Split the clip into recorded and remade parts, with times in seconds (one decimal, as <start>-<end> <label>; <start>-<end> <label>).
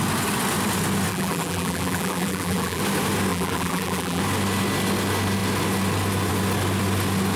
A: 0.0-1.1 recorded; 1.1-2.8 remade; 2.8-3.3 recorded; 3.3-4.2 remade; 4.2-7.4 recorded